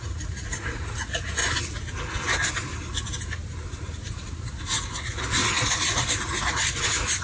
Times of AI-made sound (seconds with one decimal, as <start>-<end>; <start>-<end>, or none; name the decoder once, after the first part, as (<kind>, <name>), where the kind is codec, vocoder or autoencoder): 0.0-1.4 (vocoder, Vocos); 4.9-7.2